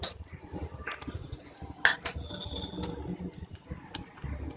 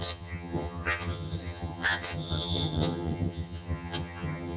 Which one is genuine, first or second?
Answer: first